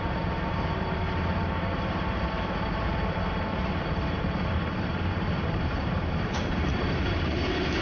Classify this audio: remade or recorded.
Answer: remade